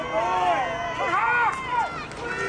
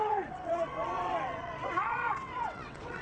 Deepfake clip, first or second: second